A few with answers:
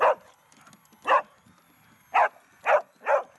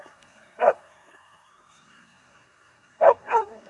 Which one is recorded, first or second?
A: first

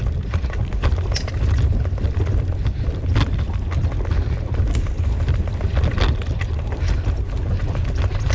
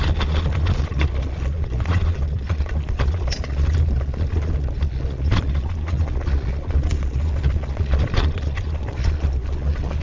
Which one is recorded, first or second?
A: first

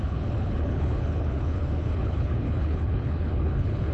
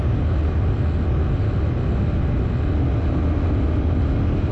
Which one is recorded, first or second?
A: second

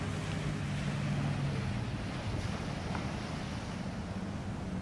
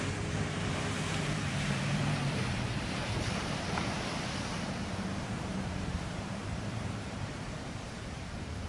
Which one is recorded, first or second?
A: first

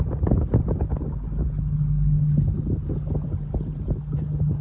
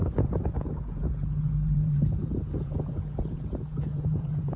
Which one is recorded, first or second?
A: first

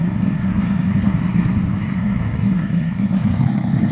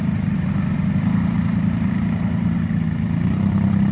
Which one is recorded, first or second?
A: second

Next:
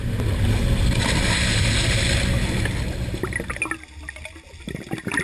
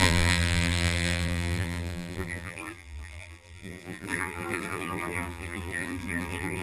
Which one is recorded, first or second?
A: first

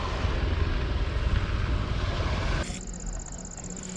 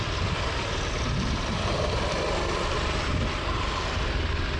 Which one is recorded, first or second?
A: first